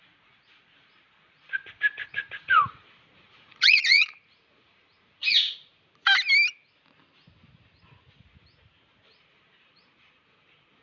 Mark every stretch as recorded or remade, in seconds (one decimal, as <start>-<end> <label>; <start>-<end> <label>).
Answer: 0.0-5.2 remade; 5.2-9.2 recorded; 9.2-10.8 remade